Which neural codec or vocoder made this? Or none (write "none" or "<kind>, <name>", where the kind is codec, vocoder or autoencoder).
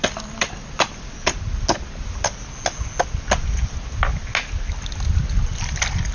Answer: none